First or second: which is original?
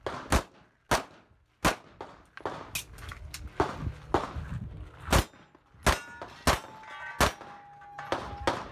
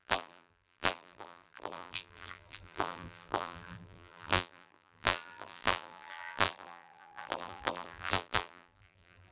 first